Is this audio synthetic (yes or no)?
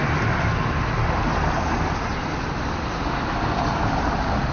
no